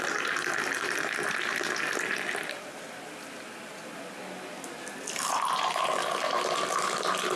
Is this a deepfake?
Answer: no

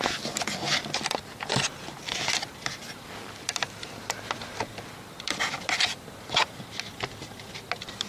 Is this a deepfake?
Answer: no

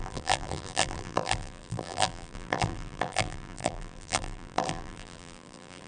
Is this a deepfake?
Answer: yes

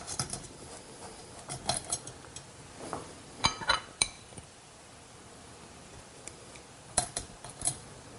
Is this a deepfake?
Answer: yes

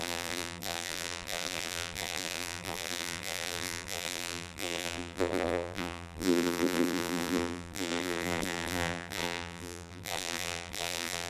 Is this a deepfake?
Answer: yes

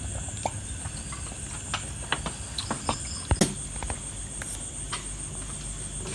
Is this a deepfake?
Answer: no